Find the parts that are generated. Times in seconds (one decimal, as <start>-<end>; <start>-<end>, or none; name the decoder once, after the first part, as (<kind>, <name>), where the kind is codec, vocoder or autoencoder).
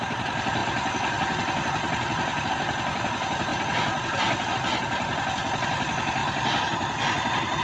none